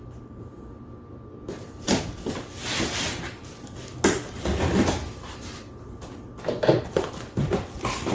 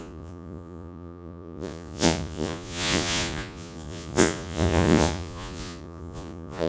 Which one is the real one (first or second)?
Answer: first